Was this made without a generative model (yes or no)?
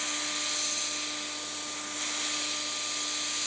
yes